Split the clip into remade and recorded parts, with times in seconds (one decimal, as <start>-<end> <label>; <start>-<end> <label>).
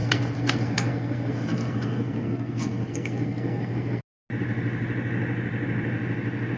0.0-4.0 remade; 4.0-6.6 recorded